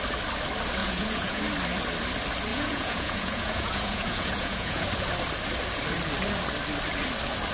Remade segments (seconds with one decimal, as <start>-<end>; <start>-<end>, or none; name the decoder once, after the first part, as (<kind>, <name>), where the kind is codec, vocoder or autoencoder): 0.8-1.4 (vocoder, Vocos); 2.5-4.9